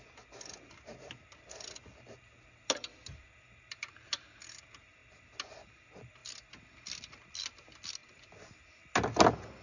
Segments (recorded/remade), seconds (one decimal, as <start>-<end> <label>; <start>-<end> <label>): 0.0-9.6 recorded